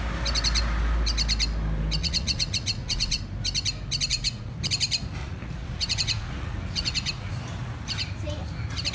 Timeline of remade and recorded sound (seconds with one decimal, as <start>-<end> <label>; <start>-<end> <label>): 0.0-2.0 recorded; 2.0-3.2 remade; 3.2-4.1 recorded; 4.1-4.6 remade; 4.6-5.2 recorded; 5.2-7.3 remade; 7.3-8.9 recorded